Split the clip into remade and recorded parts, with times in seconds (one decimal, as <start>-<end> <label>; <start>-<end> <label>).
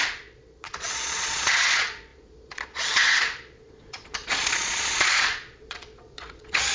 0.0-6.7 remade